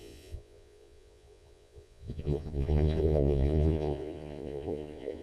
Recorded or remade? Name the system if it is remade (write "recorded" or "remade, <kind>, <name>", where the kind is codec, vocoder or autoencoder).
remade, vocoder, Vocos